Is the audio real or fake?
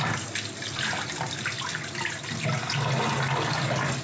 real